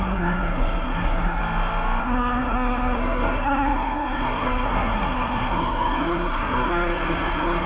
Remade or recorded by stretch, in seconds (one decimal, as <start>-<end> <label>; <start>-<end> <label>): 0.0-1.4 remade; 1.4-2.0 recorded; 2.0-7.7 remade